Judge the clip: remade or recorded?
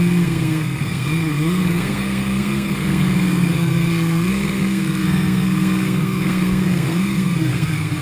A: remade